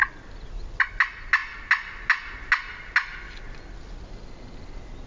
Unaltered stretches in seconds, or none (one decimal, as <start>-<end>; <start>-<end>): 0.0-5.1